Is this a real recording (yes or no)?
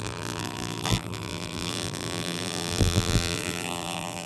no